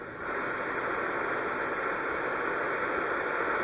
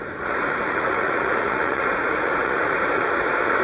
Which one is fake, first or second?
second